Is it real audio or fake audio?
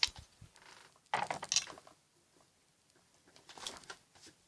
real